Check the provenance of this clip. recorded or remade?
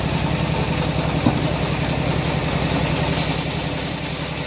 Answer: recorded